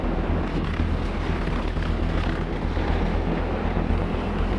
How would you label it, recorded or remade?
recorded